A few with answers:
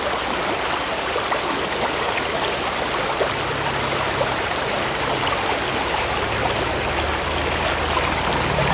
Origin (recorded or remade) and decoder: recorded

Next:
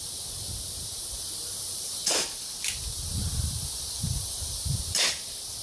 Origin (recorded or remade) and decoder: remade, vocoder, BigVGAN v2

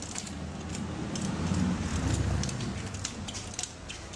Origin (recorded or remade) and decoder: recorded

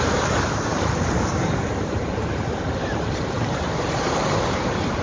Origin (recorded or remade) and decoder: remade, vocoder, BigVGAN v2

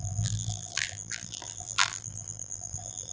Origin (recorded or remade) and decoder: remade, vocoder, BigVGAN v2